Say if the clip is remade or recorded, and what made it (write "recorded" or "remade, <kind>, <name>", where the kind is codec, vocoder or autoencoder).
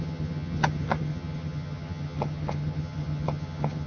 remade, vocoder, HiFi-GAN